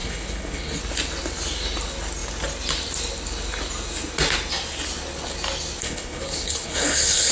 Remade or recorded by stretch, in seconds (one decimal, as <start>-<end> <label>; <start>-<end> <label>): 0.0-0.8 remade; 0.8-5.8 recorded; 5.8-7.3 remade